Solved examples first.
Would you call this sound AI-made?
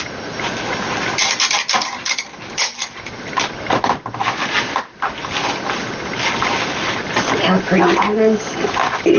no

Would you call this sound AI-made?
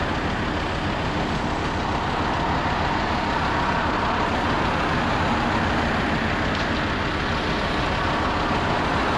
no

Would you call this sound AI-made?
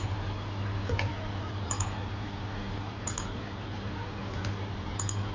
no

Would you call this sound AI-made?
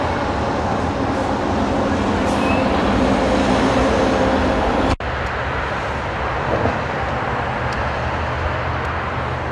no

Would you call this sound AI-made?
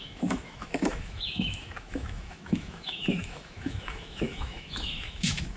yes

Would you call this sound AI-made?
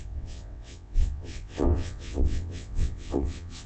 yes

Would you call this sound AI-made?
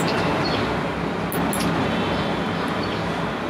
no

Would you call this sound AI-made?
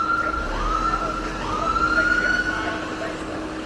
no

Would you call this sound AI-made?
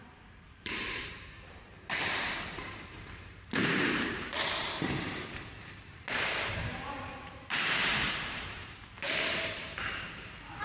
yes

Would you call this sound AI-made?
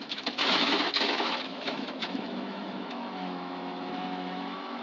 yes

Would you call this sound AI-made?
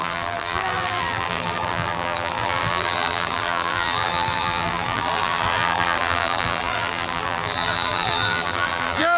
yes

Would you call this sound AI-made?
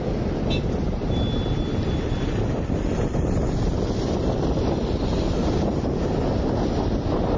no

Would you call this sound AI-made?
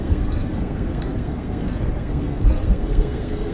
yes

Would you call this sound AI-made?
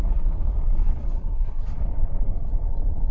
yes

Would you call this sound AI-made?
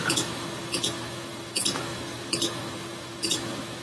yes